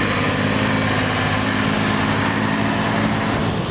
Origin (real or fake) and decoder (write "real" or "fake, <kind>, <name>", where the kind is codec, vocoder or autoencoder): real